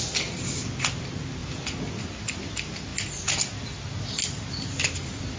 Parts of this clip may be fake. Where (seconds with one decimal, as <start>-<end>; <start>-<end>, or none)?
none